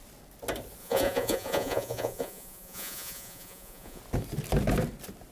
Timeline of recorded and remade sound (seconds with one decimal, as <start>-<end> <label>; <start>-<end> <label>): 0.0-0.8 recorded; 0.8-4.0 remade; 4.0-5.3 recorded